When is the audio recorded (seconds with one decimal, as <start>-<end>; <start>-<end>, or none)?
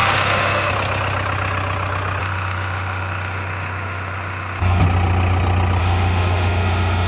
0.7-2.2; 4.8-5.8